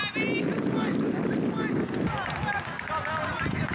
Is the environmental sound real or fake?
real